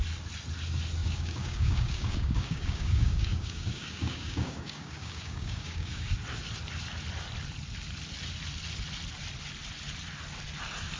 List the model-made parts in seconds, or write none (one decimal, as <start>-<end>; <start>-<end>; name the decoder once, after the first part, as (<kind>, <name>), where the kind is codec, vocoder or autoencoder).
1.0-6.1 (codec, DAC)